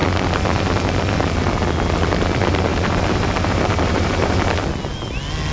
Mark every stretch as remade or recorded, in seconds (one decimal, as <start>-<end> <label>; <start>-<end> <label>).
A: 0.0-2.7 recorded; 2.7-4.4 remade; 4.4-5.5 recorded